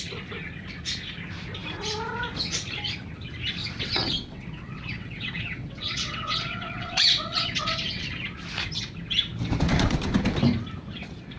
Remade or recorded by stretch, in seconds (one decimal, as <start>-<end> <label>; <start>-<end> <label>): 0.0-3.6 recorded; 3.6-8.2 remade; 8.2-11.4 recorded